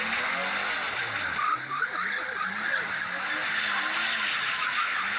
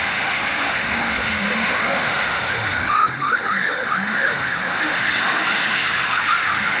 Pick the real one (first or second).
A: first